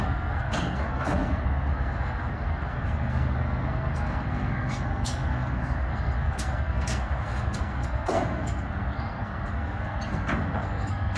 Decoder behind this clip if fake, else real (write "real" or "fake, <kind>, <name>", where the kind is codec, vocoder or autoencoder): fake, codec, SNAC